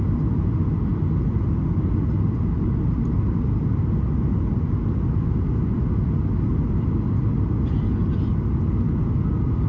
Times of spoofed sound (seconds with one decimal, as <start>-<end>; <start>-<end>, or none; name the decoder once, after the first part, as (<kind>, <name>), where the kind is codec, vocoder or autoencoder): none